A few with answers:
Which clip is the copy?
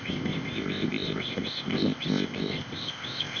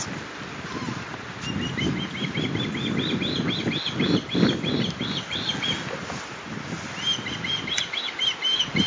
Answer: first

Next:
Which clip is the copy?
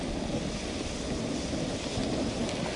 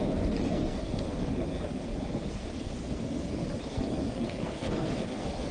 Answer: second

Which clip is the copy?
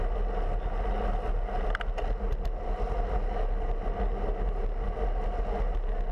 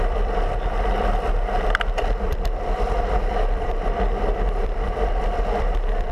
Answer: second